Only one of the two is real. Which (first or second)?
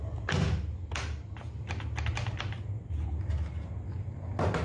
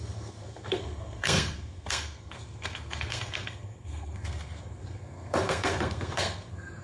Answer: first